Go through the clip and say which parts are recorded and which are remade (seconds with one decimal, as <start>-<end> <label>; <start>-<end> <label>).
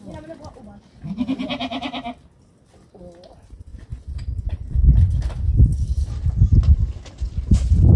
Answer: 0.0-1.0 recorded; 1.0-2.9 remade; 2.9-3.7 recorded; 3.7-5.2 remade; 5.2-8.0 recorded